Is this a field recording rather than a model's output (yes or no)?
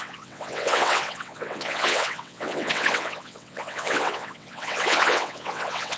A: no